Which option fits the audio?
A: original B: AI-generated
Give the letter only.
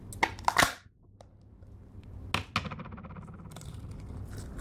A